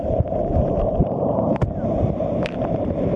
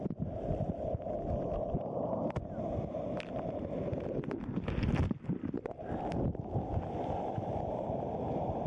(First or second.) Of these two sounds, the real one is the second